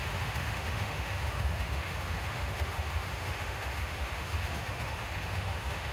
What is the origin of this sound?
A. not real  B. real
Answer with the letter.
A